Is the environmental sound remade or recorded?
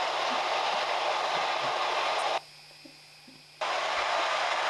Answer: recorded